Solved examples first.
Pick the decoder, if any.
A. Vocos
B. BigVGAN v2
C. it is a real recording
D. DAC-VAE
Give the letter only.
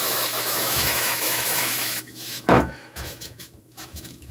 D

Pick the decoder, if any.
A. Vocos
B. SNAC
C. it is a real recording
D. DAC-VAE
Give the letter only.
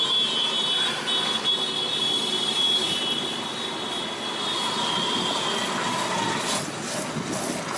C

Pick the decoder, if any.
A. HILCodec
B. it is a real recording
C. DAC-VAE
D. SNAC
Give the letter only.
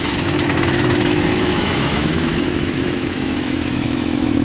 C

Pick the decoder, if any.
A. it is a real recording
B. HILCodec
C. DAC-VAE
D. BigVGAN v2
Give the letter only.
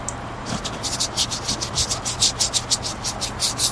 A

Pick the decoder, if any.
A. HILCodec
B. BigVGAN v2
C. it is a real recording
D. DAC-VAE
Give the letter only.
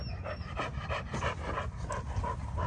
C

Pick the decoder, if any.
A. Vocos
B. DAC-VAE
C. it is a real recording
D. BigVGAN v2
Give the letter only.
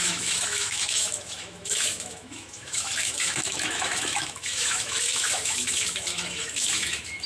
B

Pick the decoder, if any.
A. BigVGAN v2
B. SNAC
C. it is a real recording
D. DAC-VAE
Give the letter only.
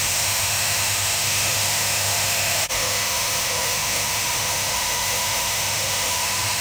D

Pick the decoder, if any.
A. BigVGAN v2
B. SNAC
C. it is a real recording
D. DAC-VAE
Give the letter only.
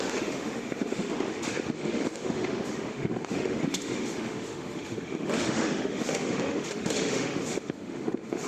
D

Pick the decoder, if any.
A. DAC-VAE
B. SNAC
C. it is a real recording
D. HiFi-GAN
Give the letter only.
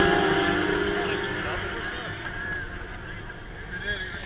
C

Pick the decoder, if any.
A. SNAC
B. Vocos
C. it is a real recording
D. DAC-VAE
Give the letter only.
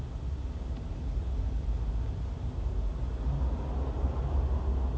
C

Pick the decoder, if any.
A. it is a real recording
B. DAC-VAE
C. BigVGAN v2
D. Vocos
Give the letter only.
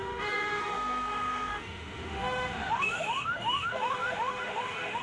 B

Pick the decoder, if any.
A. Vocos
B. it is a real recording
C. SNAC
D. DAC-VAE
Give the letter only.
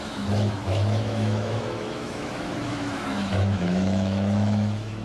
D